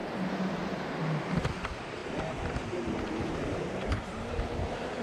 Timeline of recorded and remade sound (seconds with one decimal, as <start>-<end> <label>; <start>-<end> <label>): 0.0-1.3 remade; 1.3-2.0 recorded; 2.0-5.0 remade